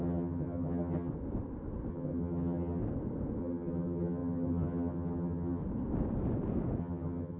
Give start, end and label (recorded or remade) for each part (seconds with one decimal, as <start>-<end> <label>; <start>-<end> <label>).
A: 0.0-1.1 remade; 1.1-1.9 recorded; 1.9-2.8 remade; 2.8-3.4 recorded; 3.4-5.6 remade; 5.6-6.8 recorded; 6.8-7.4 remade

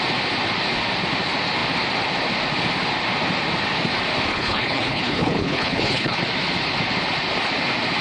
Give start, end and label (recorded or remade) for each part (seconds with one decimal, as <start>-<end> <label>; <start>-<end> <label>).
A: 0.0-4.3 recorded; 4.3-6.2 remade; 6.2-8.0 recorded